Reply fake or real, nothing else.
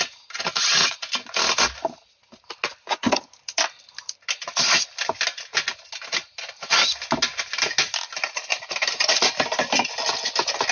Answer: real